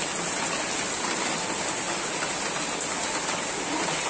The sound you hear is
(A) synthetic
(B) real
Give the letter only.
B